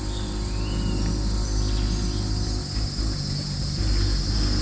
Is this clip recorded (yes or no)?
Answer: yes